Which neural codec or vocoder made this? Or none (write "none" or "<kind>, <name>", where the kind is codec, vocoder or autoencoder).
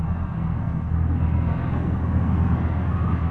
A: codec, SNAC